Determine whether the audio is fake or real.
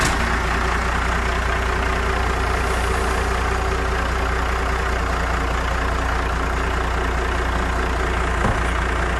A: real